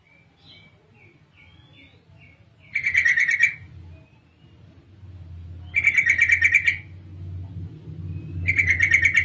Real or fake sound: real